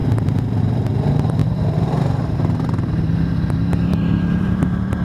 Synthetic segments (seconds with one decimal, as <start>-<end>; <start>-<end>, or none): 0.6-5.0